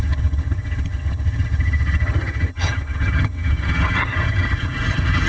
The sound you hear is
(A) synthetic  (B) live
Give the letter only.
A